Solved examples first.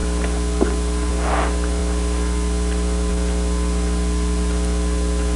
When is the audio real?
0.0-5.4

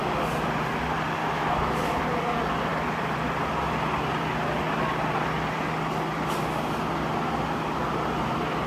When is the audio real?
0.0-1.2; 2.0-8.7